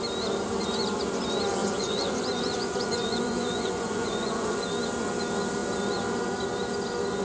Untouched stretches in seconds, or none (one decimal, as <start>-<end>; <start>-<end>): 0.0-1.6; 4.6-7.2